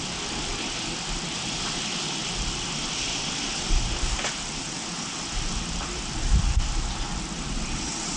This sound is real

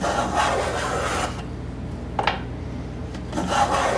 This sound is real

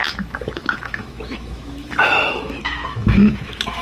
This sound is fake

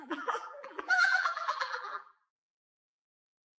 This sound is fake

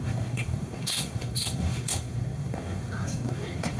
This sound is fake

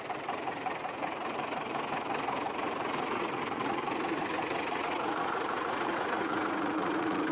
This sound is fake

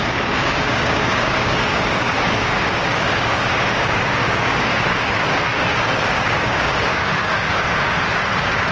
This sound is fake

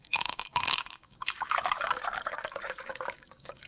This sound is fake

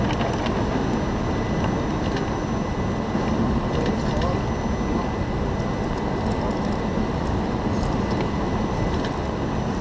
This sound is real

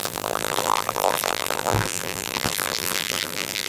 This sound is fake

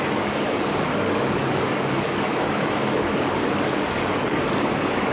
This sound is fake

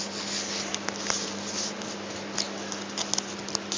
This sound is real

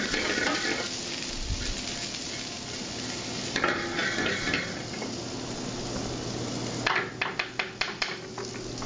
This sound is real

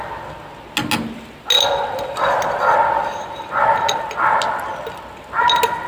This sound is real